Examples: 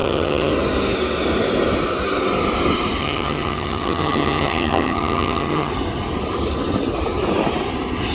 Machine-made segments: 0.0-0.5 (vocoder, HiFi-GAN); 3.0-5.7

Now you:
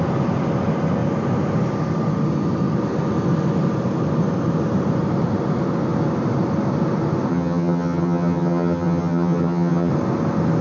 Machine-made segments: 7.3-9.9 (vocoder, HiFi-GAN)

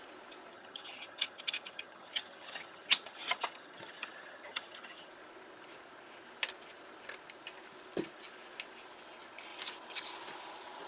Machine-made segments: 0.5-5.1 (vocoder, HiFi-GAN)

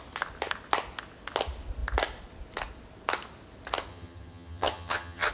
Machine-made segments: 3.9-5.3 (vocoder, HiFi-GAN)

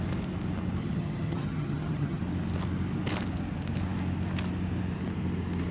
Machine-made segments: 0.8-2.2 (vocoder, HiFi-GAN)

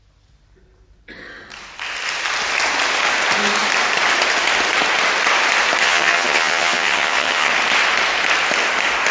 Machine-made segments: 5.8-7.5 (vocoder, HiFi-GAN)

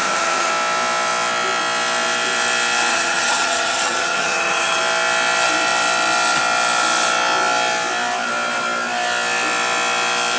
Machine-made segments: 0.0-0.5 (vocoder, HiFi-GAN); 2.9-4.8